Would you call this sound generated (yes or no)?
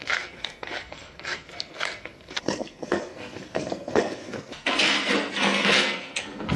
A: yes